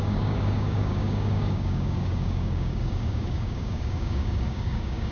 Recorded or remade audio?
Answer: remade